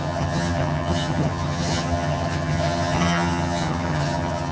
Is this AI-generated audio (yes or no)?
yes